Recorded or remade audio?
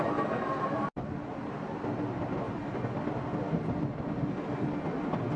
recorded